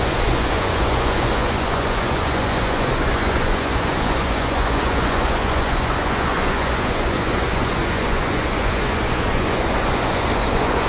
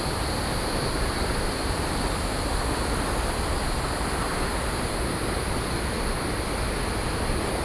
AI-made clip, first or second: first